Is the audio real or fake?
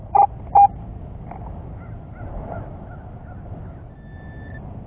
real